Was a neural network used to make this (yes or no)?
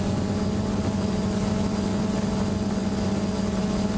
no